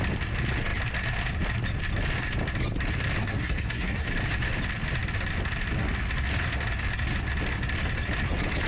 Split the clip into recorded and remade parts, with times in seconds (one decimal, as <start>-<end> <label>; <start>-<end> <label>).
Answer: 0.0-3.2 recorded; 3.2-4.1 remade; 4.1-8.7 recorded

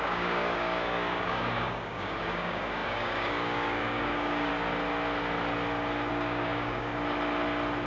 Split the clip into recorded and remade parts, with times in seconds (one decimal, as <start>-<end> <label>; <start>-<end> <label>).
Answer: 0.0-4.5 remade; 4.5-6.1 recorded; 6.1-6.9 remade; 6.9-7.9 recorded

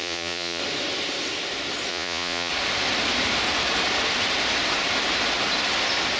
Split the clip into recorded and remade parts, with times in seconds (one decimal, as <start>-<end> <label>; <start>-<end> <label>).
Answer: 0.0-0.6 remade; 0.6-1.9 recorded; 1.9-2.5 remade; 2.5-6.2 recorded